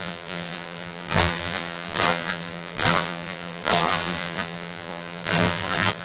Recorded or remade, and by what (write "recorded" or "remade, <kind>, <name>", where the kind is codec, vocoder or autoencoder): remade, vocoder, BigVGAN v2